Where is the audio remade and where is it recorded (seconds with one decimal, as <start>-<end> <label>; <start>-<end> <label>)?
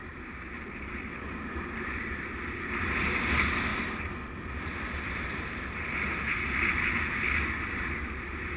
0.0-2.7 remade; 2.7-3.7 recorded; 3.7-5.8 remade; 5.8-8.6 recorded